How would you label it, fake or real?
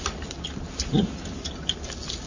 real